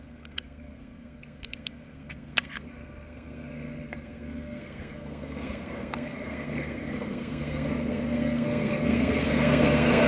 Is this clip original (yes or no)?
no